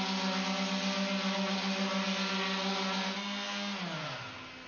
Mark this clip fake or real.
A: real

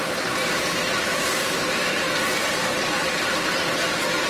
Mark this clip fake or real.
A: real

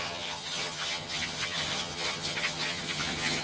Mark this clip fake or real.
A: fake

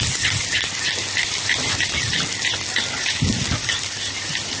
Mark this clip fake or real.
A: real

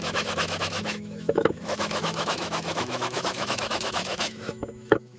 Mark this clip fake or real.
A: fake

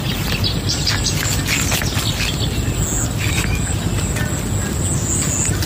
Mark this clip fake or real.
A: real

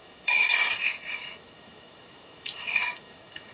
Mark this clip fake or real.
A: fake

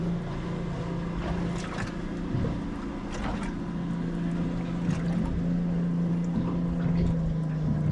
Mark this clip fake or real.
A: real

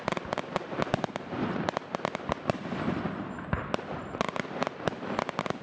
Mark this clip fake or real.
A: fake